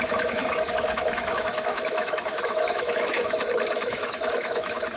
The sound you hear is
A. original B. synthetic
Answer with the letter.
B